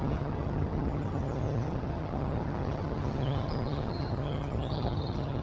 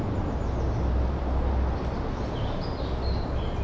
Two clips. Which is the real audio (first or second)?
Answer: second